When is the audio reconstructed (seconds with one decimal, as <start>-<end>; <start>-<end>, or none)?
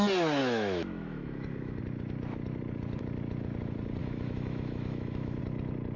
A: 0.4-1.8; 4.0-5.4